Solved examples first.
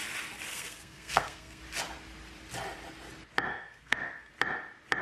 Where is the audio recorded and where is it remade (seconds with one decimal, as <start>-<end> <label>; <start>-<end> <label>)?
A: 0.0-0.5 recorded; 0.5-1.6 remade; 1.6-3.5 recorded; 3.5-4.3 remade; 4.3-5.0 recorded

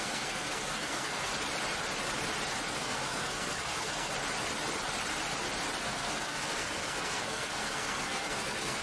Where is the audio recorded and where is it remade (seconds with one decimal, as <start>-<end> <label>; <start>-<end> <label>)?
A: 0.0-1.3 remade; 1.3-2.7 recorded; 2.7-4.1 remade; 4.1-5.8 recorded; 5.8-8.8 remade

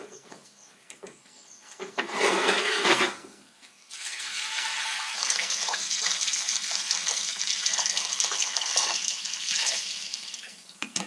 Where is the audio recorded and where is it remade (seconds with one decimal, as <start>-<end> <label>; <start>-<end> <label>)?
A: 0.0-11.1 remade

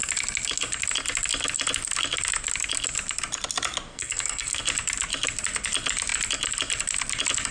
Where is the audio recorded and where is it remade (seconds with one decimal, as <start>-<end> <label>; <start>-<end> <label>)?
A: 0.0-3.9 recorded; 3.9-4.6 remade; 4.6-7.5 recorded